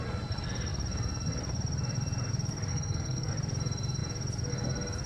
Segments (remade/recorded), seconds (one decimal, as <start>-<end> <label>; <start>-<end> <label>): 0.0-2.7 recorded; 2.7-3.3 remade; 3.3-5.1 recorded